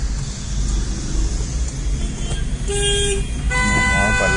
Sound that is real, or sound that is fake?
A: real